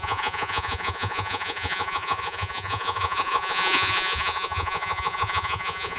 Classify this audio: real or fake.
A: fake